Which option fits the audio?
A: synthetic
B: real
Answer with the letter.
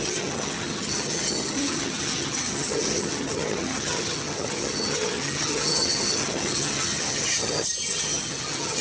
A